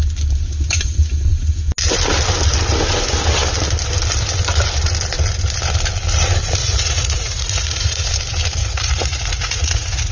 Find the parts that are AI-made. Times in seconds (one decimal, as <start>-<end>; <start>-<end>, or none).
6.6-8.1; 8.6-10.1